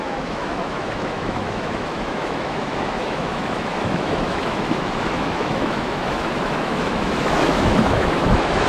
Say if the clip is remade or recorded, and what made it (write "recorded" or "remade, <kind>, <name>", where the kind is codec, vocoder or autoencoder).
remade, autoencoder, DAC-VAE